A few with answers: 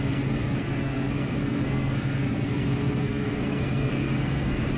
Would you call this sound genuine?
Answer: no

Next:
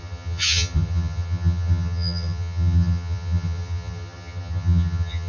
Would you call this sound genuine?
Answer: no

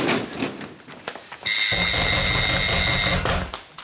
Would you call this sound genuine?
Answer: yes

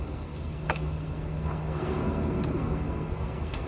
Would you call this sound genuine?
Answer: no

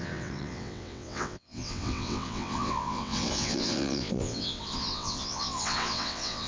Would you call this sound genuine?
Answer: no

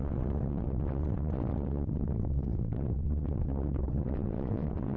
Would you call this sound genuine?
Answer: no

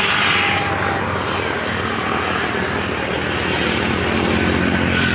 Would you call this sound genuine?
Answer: yes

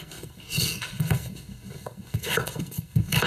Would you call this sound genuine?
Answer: no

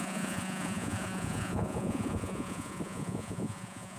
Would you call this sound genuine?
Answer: no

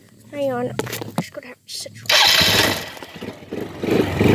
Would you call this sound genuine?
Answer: yes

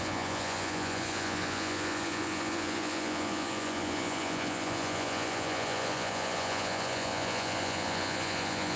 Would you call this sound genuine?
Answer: no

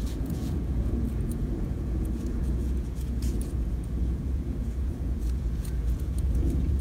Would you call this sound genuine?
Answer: no